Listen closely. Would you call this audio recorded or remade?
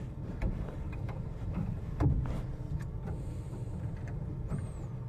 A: remade